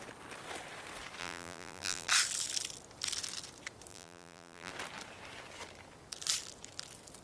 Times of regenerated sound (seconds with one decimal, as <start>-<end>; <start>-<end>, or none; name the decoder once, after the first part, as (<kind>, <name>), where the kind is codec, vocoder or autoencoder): 1.2-2.1 (vocoder, BigVGAN v2); 3.9-4.7